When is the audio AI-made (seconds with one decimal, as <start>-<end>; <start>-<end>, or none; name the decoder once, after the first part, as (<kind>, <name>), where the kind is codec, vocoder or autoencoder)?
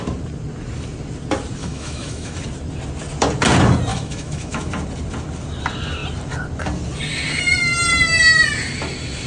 1.6-2.4 (autoencoder, DAC-VAE); 3.9-4.7